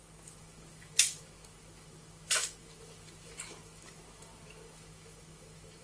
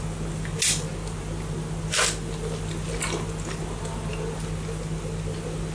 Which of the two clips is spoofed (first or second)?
first